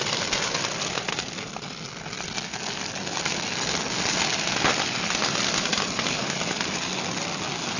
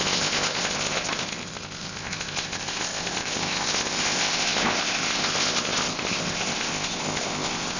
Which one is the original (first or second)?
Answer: first